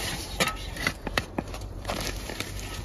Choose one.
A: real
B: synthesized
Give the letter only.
B